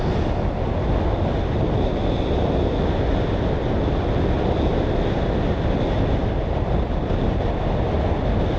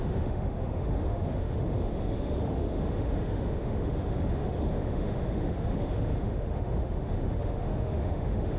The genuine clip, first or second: first